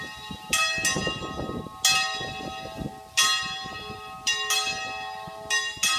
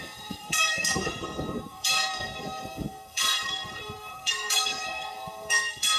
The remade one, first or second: second